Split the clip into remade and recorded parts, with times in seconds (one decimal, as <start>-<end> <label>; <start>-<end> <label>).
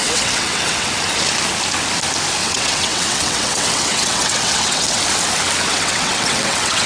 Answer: 0.0-0.9 remade; 0.9-2.4 recorded; 2.4-5.0 remade; 5.0-5.7 recorded; 5.7-6.9 remade